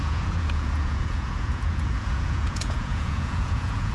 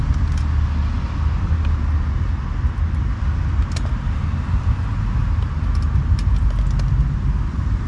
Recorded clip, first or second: second